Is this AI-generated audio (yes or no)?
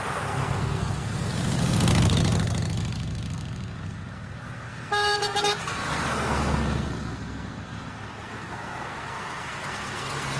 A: yes